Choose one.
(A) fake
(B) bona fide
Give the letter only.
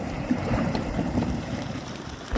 A